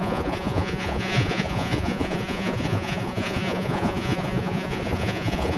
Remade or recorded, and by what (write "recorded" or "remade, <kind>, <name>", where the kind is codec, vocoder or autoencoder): remade, vocoder, Vocos